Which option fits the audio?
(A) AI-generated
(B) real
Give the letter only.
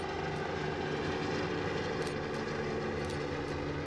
B